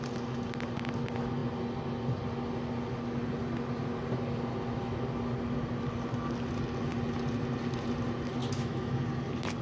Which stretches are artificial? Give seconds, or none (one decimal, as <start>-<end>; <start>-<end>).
8.4-9.0